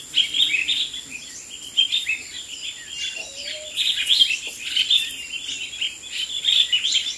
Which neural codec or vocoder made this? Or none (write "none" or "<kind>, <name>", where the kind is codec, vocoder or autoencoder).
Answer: none